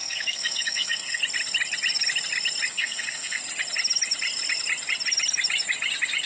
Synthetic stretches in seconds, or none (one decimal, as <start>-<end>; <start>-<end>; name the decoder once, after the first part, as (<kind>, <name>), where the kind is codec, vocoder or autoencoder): 0.0-1.2 (codec, SNAC); 2.7-3.4